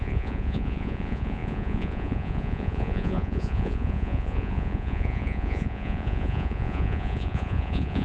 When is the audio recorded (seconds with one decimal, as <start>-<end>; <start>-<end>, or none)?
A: none